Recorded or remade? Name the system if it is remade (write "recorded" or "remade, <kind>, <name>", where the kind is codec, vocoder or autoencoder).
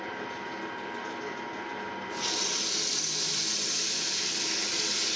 recorded